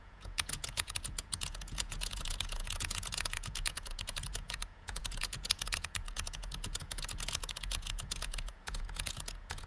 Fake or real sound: fake